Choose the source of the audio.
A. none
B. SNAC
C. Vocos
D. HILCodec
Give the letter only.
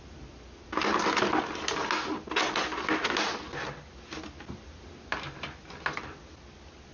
A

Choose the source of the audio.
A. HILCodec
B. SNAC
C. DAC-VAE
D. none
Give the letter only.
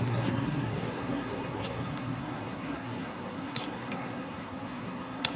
B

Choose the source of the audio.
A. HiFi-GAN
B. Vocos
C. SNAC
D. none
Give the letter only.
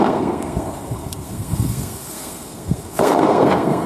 C